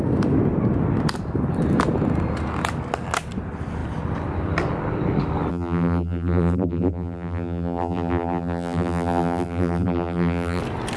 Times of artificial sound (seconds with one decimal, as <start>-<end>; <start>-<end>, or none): 5.5-10.6